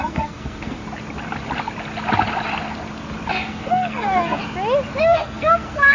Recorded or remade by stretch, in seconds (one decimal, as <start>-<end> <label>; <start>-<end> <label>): 0.0-0.8 remade; 0.8-3.5 recorded; 3.5-4.4 remade; 4.4-5.0 recorded; 5.0-5.9 remade